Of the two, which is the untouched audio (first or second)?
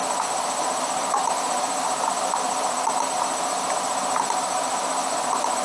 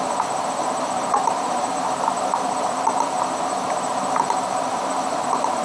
first